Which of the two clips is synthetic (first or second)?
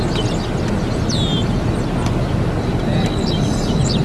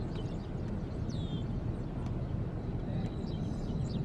second